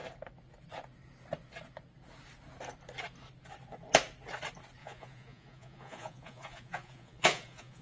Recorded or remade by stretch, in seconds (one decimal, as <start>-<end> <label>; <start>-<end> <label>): 0.0-4.8 recorded; 4.8-7.8 remade

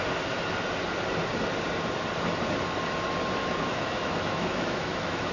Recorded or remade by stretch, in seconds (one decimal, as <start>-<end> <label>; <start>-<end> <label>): 0.0-3.4 recorded; 3.4-5.3 remade

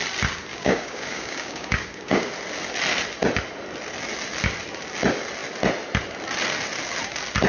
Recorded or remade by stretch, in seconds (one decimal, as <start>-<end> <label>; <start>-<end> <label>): 0.0-0.5 recorded; 0.5-2.3 remade; 2.3-7.5 recorded

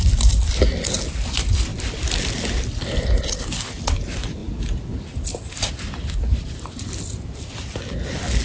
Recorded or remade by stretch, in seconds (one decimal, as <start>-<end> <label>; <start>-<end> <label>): 0.0-8.4 recorded

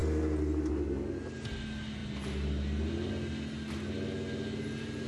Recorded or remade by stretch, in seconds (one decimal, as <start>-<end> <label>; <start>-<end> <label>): 0.0-5.1 recorded

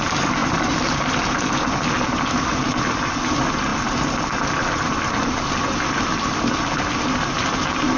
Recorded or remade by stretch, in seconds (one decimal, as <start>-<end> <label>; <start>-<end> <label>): 0.0-0.4 recorded; 0.4-1.4 remade; 1.4-8.0 recorded

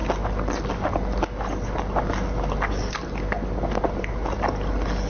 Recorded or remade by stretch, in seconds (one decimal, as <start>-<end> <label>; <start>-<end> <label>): 0.0-5.1 recorded

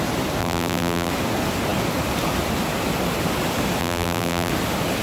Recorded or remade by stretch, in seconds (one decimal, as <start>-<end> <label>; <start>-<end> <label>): 0.0-0.4 recorded; 0.4-1.1 remade; 1.1-3.8 recorded; 3.8-4.5 remade; 4.5-5.0 recorded